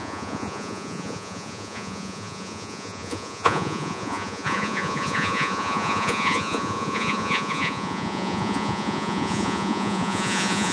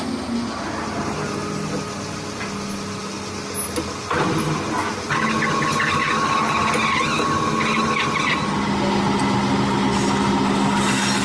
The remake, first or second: first